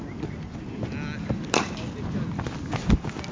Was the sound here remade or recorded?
recorded